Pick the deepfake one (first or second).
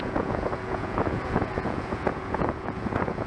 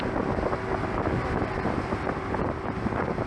first